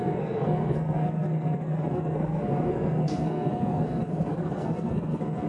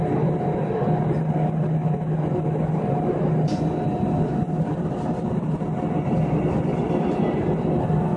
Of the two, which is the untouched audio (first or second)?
second